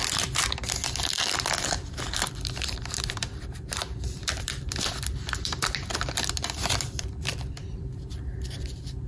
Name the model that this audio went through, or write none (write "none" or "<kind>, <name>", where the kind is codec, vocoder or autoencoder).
vocoder, BigVGAN v2